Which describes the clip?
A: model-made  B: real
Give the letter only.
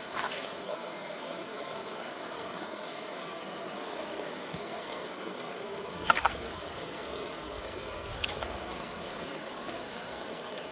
A